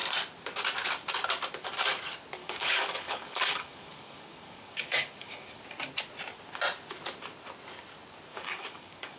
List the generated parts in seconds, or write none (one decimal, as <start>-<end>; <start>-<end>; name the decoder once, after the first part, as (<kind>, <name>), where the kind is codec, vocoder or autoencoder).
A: 2.4-5.6 (codec, DAC); 8.3-9.2